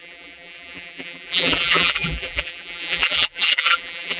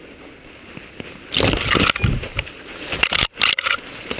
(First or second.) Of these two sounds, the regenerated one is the first